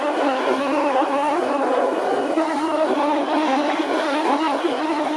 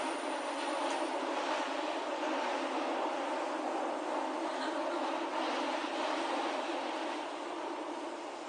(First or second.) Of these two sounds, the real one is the second